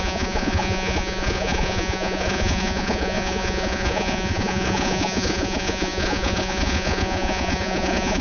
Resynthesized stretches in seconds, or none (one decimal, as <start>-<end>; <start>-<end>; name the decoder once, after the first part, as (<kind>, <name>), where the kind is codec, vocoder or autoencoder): 0.0-8.2 (vocoder, Vocos)